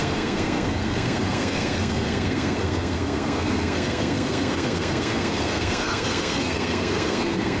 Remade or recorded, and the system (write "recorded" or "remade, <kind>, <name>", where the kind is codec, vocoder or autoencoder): remade, codec, SNAC